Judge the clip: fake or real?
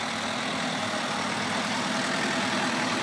real